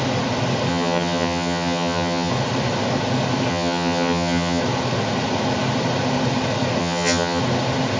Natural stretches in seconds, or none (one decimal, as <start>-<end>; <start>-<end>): 0.0-0.7; 2.3-3.5; 4.6-6.8; 7.4-8.0